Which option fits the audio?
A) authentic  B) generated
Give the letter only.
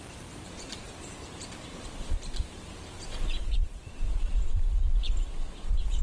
B